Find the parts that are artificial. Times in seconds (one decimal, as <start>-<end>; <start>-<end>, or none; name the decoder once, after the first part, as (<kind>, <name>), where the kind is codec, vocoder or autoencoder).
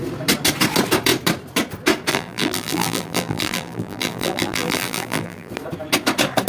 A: 2.1-5.5 (vocoder, BigVGAN v2)